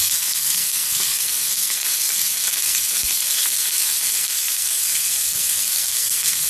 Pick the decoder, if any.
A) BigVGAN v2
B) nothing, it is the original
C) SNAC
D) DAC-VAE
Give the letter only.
C